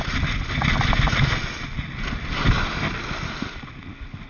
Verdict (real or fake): real